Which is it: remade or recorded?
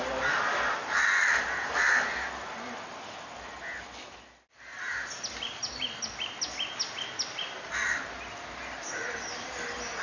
recorded